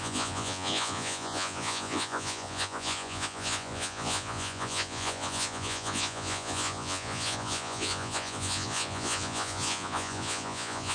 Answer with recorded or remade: remade